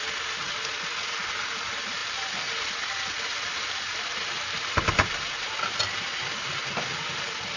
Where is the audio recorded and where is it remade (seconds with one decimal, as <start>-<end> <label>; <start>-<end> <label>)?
0.0-7.6 recorded

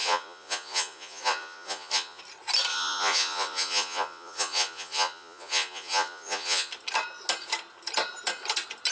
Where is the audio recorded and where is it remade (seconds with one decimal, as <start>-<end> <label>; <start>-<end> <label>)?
0.0-2.2 remade; 2.2-2.7 recorded; 2.7-6.7 remade; 6.7-8.9 recorded

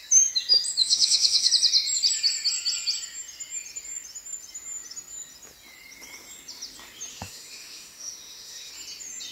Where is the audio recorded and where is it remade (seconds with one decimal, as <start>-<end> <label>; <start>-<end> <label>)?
0.0-0.8 recorded; 0.8-1.5 remade; 1.5-7.1 recorded; 7.1-8.7 remade; 8.7-9.3 recorded

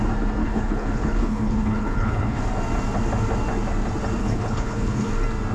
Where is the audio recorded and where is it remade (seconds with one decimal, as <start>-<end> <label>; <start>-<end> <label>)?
0.0-0.4 recorded; 0.4-2.4 remade; 2.4-4.2 recorded; 4.2-5.1 remade; 5.1-5.5 recorded

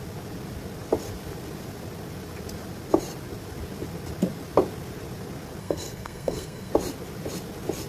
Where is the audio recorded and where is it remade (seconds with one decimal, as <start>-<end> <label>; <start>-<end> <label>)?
0.0-5.6 recorded; 5.6-6.7 remade; 6.7-7.9 recorded

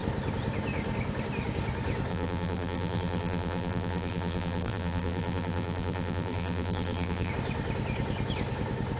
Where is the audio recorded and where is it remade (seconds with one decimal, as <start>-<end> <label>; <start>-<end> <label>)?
0.0-2.1 recorded; 2.1-7.3 remade; 7.3-9.0 recorded

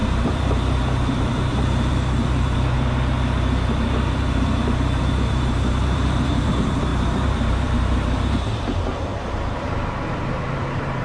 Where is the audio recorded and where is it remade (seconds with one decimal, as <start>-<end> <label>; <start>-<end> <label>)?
0.0-9.1 remade; 9.1-10.3 recorded; 10.3-11.0 remade